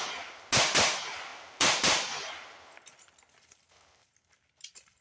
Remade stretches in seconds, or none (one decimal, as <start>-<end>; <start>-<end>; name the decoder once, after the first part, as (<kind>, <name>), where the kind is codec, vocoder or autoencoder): none